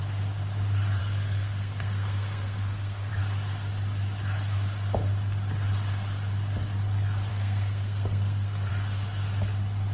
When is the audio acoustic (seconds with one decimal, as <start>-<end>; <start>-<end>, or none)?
0.0-1.0; 3.1-7.3; 8.7-9.9